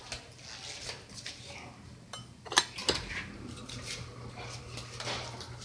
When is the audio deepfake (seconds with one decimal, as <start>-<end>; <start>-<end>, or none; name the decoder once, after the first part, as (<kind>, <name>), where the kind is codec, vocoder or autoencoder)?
none